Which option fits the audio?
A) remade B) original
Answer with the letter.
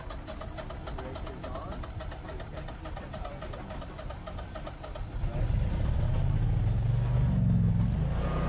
B